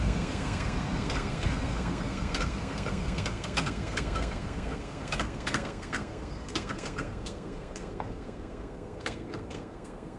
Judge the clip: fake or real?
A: fake